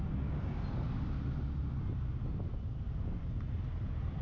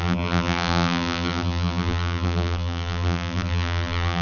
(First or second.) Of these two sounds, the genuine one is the first